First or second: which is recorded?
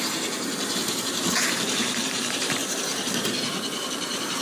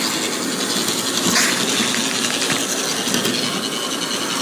second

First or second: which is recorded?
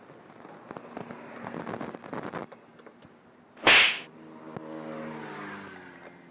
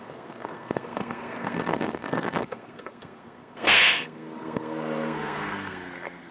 first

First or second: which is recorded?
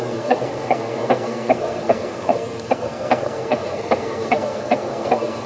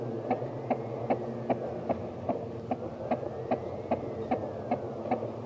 second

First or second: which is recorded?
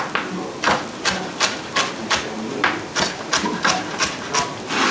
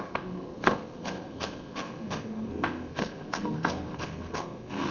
first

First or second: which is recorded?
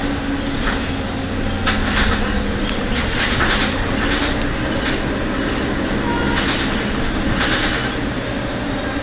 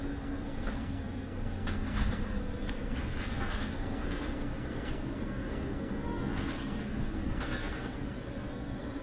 first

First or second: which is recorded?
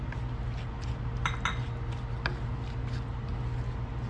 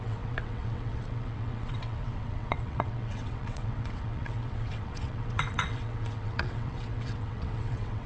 first